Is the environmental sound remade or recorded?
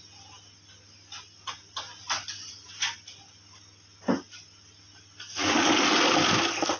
recorded